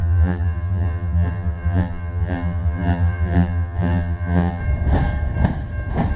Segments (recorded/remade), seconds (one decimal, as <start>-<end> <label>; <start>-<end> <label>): 0.0-4.6 remade; 4.6-6.2 recorded